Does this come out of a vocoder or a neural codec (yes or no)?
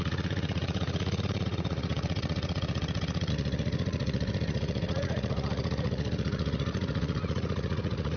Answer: yes